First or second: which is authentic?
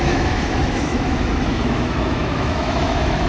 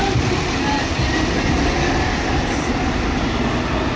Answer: second